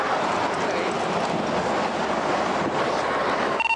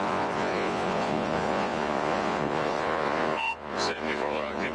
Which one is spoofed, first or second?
second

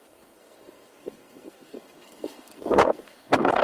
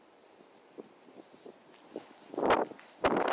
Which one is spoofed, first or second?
first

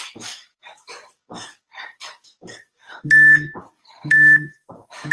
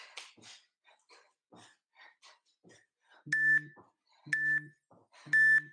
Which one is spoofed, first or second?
first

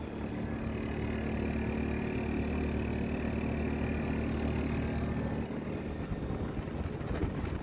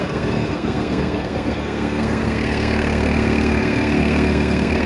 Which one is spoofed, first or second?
second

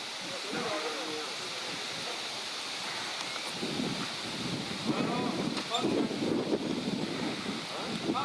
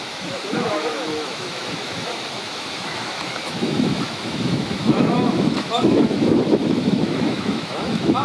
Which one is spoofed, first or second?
second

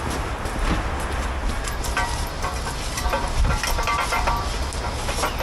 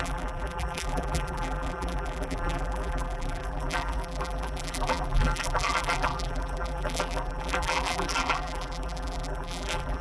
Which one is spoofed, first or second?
second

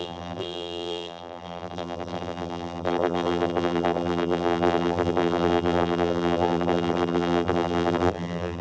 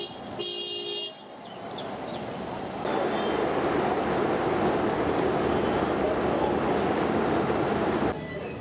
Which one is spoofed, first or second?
first